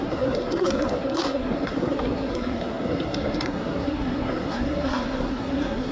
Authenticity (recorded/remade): remade